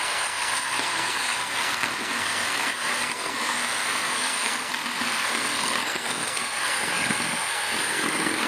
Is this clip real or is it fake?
fake